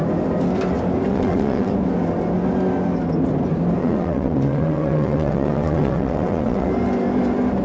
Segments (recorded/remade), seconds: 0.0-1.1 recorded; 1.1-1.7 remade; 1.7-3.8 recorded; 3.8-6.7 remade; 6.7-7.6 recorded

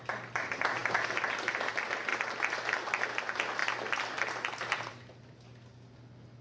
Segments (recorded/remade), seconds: 0.0-6.4 recorded